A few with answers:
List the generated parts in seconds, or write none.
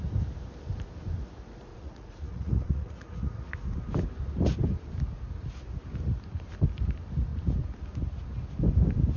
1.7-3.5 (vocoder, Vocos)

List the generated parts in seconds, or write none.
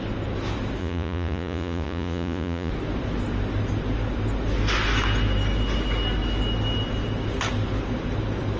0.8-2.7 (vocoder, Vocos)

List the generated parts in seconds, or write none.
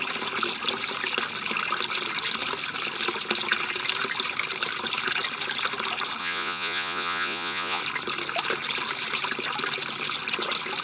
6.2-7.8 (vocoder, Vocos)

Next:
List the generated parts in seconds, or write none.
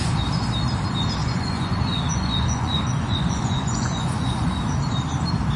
1.2-4.6 (vocoder, Vocos)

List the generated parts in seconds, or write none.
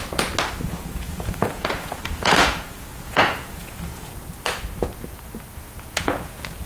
0.9-3.8 (vocoder, Vocos); 5.5-6.3